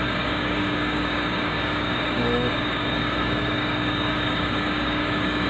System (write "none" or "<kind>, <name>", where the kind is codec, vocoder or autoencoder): codec, DAC